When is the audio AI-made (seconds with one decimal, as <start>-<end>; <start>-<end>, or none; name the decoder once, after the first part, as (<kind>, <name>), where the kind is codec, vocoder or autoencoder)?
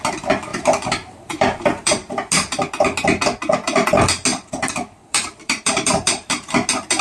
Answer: 0.5-2.3 (vocoder, BigVGAN v2); 4.3-6.5